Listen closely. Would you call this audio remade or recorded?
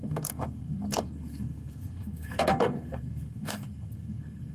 remade